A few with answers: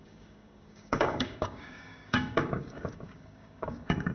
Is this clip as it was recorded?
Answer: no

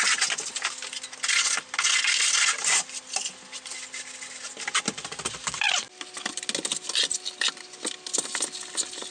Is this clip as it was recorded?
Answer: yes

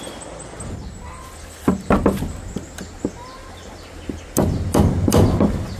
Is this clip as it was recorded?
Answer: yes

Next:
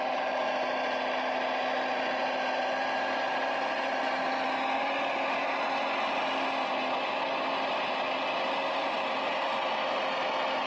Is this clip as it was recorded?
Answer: yes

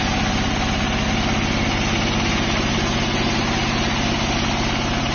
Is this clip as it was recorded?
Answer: yes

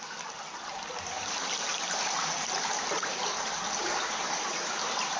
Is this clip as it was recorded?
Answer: yes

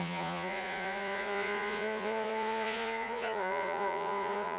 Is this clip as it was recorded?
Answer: no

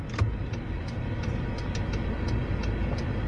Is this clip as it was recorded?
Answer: yes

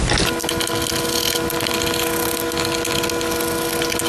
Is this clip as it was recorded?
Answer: yes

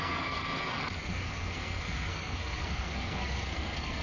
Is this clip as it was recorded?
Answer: no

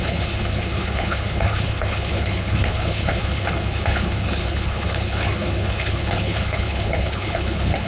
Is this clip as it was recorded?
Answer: no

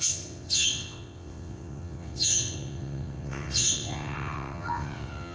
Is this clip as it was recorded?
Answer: no